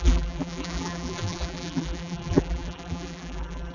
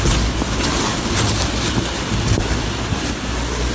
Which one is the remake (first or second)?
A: first